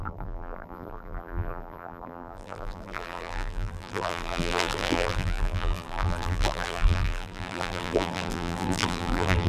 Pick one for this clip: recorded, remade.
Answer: remade